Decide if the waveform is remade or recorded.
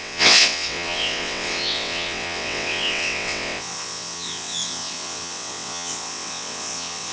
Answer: remade